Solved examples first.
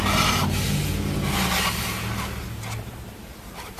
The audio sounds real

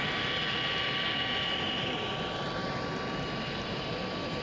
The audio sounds real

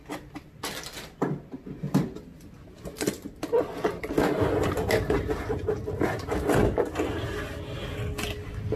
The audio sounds real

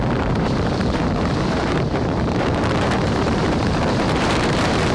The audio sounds fake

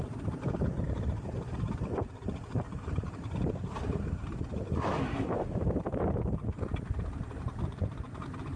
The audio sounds fake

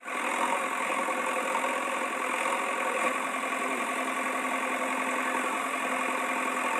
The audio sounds real